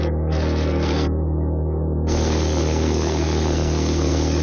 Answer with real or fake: fake